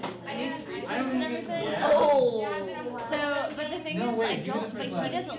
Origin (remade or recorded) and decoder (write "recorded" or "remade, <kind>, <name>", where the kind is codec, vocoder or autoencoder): recorded